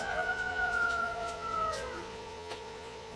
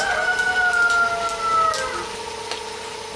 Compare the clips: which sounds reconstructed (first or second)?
first